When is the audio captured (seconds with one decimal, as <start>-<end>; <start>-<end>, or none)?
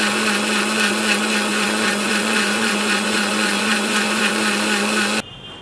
0.0-1.5; 4.3-5.6